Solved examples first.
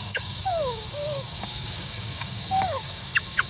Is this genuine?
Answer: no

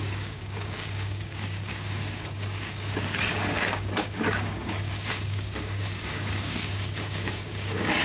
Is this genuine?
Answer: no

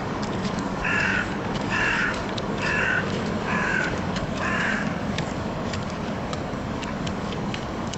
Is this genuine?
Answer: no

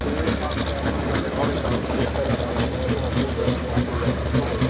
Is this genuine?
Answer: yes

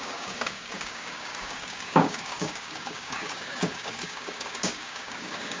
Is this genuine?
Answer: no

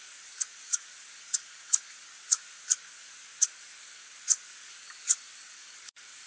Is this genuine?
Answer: no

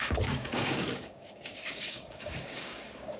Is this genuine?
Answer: no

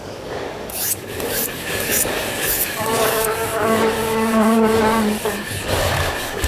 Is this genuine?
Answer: no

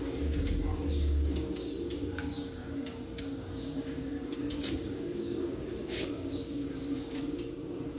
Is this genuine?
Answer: no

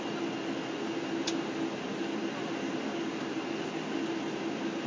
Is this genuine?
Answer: yes